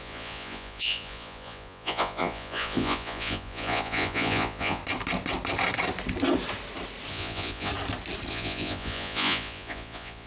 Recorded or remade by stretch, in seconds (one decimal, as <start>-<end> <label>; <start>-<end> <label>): 0.0-4.8 remade; 4.8-7.1 recorded; 7.1-7.7 remade; 7.7-8.3 recorded; 8.3-10.3 remade